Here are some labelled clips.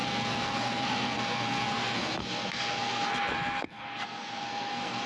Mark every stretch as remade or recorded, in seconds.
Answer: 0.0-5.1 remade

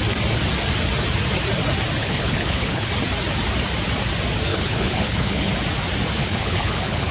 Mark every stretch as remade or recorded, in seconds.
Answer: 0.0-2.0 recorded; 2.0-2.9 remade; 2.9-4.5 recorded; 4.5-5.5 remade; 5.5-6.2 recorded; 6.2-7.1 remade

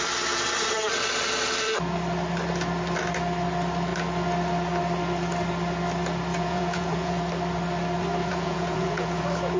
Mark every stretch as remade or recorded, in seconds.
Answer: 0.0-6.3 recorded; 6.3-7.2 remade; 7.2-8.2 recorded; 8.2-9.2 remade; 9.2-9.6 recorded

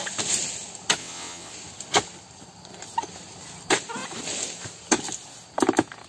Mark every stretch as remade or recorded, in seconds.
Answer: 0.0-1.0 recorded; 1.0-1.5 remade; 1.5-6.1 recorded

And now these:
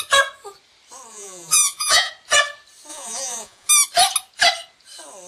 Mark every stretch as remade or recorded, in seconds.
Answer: 0.0-1.1 recorded; 1.1-2.1 remade; 2.1-2.9 recorded; 2.9-3.7 remade; 3.7-5.3 recorded

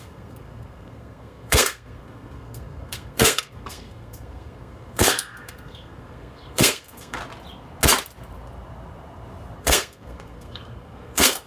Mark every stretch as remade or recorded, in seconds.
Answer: 0.0-7.2 remade; 7.2-9.6 recorded; 9.6-11.5 remade

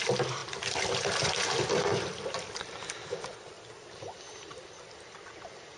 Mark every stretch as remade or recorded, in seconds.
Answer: 0.0-1.9 recorded; 1.9-3.1 remade; 3.1-5.8 recorded

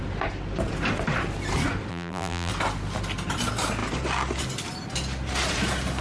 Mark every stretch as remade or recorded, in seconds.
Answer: 0.0-1.9 recorded; 1.9-2.5 remade; 2.5-6.0 recorded